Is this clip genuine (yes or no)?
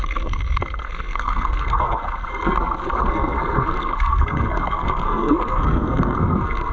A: no